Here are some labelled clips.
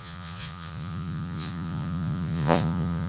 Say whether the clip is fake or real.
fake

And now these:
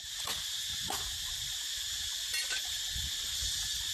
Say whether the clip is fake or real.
real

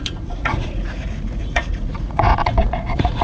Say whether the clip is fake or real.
fake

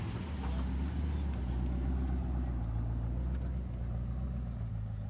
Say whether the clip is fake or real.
real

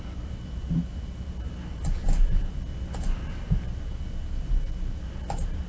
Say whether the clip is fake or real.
real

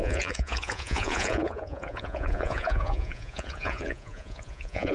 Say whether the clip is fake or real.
fake